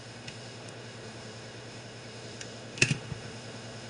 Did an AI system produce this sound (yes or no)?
yes